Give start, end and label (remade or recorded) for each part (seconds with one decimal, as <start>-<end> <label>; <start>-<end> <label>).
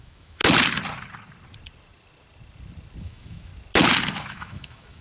0.0-0.4 remade; 0.4-3.0 recorded; 3.0-3.5 remade; 3.5-4.2 recorded; 4.2-5.0 remade